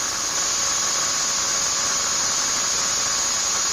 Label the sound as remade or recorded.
recorded